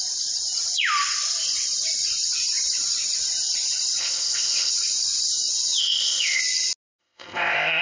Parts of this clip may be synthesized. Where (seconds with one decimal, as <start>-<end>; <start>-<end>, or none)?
4.0-4.7; 5.8-6.4; 7.0-7.8